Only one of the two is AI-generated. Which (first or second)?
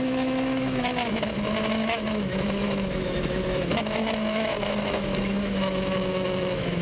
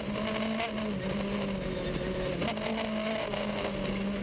first